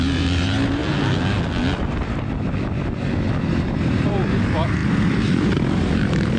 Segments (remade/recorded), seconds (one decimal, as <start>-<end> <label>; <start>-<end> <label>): 0.0-0.8 remade; 0.8-3.4 recorded; 3.4-6.4 remade

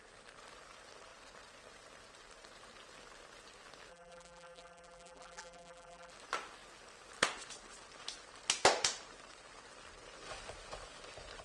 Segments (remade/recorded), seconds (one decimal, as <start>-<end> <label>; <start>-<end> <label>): 0.0-3.9 recorded; 3.9-6.1 remade; 6.1-11.4 recorded

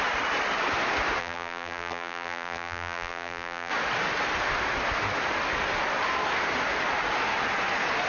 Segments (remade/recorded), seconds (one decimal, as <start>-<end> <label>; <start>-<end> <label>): 0.0-1.2 recorded; 1.2-3.7 remade; 3.7-8.1 recorded